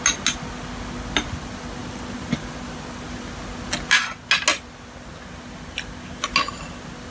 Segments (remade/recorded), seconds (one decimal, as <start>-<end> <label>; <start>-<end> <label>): 0.0-7.1 recorded